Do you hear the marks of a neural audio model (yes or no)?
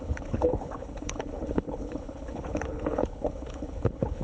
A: yes